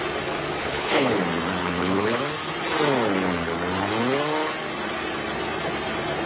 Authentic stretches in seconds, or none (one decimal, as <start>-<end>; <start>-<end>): 0.0-0.6; 1.2-1.6; 2.2-6.3